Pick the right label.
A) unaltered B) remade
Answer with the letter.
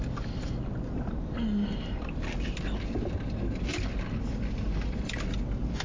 A